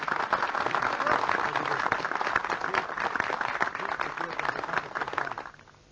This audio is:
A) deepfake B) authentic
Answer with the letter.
B